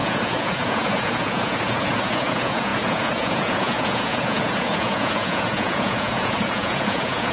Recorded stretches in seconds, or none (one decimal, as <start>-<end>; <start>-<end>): none